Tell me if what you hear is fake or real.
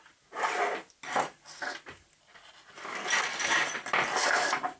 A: real